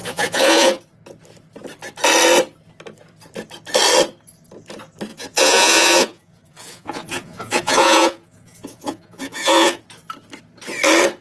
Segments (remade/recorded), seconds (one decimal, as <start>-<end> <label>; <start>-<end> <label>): 0.0-0.8 remade; 0.8-5.1 recorded; 5.1-9.8 remade; 9.8-11.2 recorded